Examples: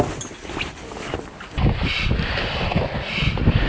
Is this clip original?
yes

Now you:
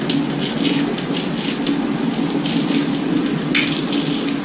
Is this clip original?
yes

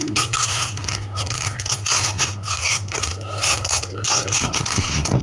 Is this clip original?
no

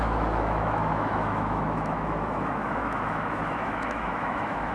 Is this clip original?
no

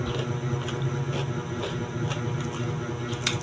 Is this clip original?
yes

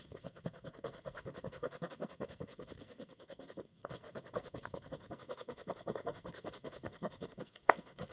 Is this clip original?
no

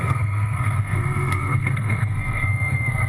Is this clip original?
no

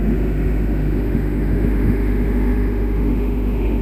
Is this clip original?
no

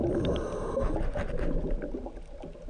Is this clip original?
yes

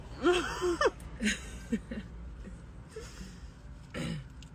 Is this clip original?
yes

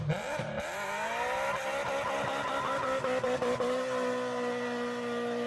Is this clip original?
yes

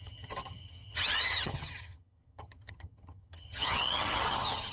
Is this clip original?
no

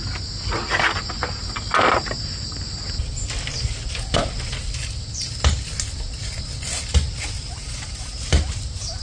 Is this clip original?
yes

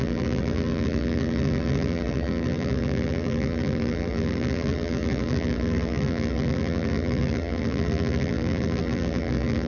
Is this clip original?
no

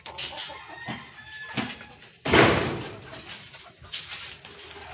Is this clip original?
yes